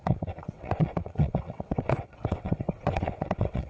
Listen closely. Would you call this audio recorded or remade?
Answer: remade